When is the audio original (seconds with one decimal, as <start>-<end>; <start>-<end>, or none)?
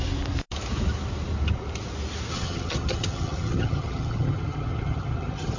0.0-2.3